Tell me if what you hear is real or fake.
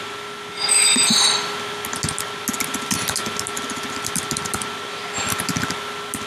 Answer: real